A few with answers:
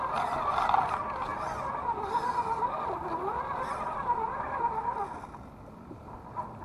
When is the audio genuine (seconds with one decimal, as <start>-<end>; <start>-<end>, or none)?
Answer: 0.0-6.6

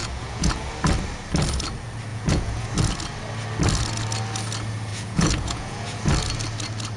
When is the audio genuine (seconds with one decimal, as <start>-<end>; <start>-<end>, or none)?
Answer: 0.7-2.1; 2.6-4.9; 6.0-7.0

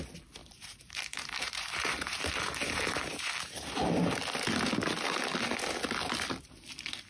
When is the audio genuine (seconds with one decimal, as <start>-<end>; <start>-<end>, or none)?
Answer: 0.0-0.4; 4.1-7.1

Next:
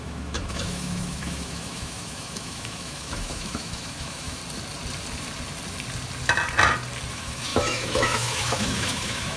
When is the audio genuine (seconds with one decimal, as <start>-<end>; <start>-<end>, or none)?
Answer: 4.4-7.1